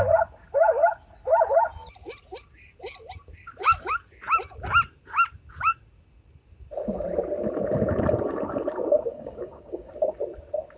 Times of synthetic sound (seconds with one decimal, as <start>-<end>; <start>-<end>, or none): 9.1-9.9